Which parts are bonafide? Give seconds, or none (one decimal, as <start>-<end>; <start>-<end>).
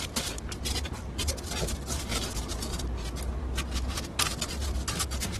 0.0-5.4